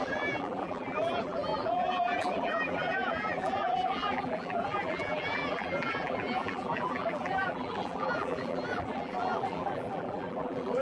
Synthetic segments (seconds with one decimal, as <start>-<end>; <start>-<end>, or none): 0.0-10.8